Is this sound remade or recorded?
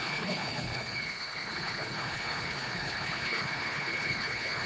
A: remade